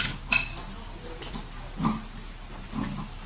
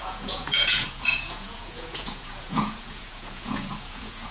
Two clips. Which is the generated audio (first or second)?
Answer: second